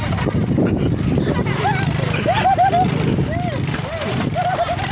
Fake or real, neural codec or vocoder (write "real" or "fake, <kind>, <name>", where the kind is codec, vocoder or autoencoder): real